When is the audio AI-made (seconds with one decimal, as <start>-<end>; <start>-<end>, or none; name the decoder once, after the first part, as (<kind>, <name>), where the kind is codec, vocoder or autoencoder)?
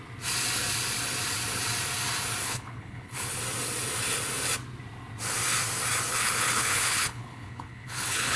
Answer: 2.4-3.4 (codec, HILCodec); 6.1-8.4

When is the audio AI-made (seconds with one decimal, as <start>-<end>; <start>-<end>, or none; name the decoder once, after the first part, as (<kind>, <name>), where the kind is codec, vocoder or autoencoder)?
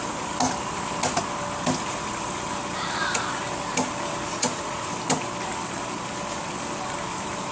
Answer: 4.3-4.9 (vocoder, Vocos)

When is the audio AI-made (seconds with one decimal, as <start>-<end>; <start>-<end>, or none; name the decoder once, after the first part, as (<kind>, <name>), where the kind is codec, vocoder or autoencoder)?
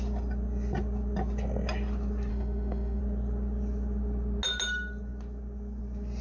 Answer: 2.3-3.0 (autoencoder, DAC-VAE)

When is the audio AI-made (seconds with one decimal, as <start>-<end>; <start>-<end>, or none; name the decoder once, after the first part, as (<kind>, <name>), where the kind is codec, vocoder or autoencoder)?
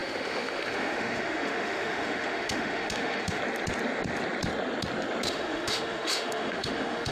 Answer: 0.0-3.4 (autoencoder, DAC-VAE); 5.3-7.1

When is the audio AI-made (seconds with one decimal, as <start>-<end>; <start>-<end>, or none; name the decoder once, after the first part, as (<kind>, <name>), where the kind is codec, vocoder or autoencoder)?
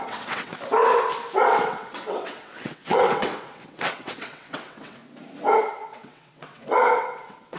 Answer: 0.0-0.5 (vocoder, WaveNeXt); 1.6-5.0; 5.6-7.6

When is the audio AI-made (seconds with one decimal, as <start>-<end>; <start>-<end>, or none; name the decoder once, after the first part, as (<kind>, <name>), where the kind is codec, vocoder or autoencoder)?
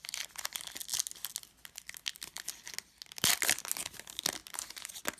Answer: none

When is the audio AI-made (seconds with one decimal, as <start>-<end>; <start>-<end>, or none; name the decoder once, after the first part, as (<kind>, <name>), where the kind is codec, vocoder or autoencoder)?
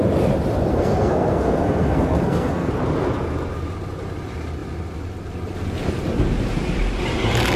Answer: 0.7-2.7 (codec, SNAC)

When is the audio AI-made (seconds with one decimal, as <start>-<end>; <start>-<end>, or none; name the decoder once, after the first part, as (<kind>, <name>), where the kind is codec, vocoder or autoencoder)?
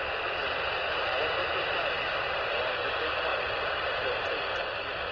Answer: 0.8-2.4 (vocoder, BigVGAN v2); 3.3-5.1